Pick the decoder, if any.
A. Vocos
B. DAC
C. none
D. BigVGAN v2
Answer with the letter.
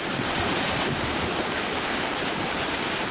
D